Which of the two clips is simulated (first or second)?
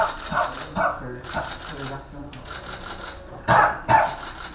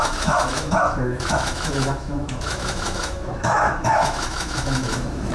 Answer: second